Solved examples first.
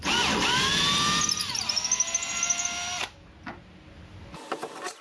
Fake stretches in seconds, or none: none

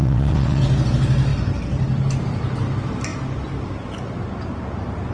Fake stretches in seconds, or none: 0.0-0.6

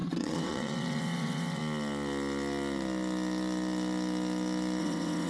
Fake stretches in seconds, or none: 0.0-1.6; 4.8-5.3

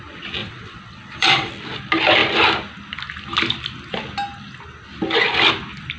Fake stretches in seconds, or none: 0.4-1.5

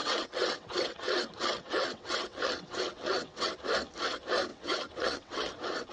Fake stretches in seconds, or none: 0.0-3.5; 4.5-5.9

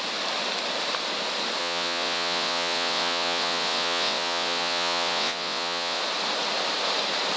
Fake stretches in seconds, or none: 1.6-6.0